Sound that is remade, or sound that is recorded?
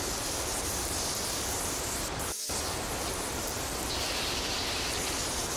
recorded